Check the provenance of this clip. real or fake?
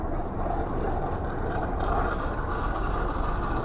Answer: fake